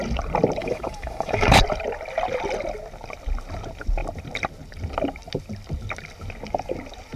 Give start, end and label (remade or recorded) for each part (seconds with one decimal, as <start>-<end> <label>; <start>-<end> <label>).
0.0-0.6 recorded; 0.6-1.6 remade; 1.6-7.2 recorded

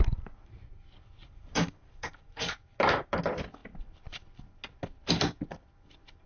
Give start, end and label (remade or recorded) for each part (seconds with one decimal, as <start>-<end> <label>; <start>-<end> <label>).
0.0-1.2 recorded; 1.2-3.2 remade; 3.2-6.3 recorded